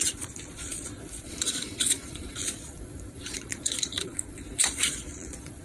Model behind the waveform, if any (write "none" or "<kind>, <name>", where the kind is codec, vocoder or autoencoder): vocoder, Vocos